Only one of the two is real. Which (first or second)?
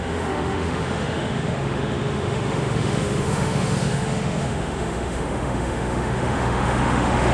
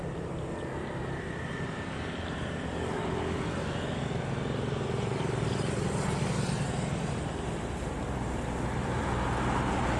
second